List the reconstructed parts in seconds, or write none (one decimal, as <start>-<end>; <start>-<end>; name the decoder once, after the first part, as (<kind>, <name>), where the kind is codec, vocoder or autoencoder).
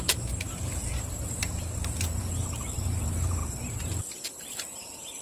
0.0-0.9 (vocoder, BigVGAN v2); 2.2-5.2